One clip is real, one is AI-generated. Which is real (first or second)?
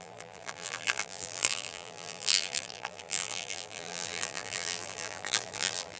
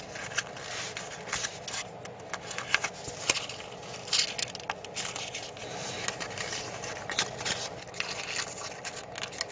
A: second